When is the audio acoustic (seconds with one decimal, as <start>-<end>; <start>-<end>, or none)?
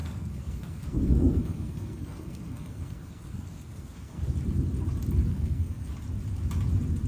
4.3-5.3; 5.9-7.1